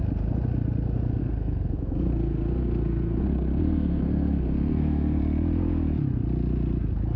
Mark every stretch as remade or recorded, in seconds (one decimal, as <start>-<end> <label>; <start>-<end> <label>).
0.0-1.2 recorded; 1.2-5.2 remade; 5.2-7.2 recorded